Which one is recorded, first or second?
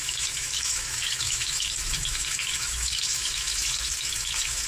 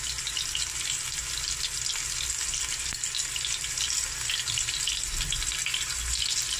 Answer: second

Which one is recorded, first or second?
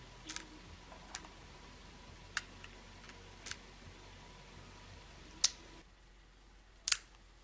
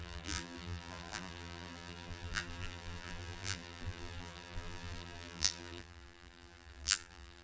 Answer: first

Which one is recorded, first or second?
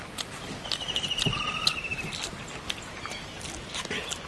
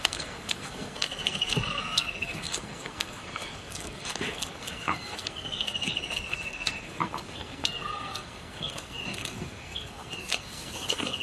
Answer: first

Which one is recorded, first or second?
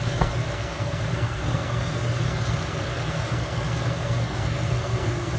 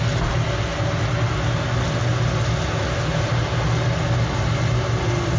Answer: second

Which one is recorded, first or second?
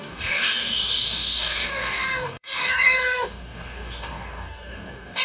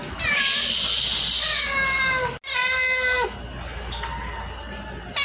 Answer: second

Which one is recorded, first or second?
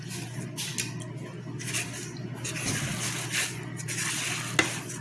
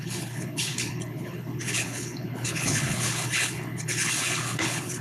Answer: first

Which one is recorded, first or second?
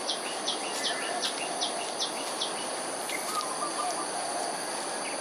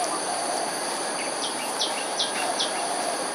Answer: first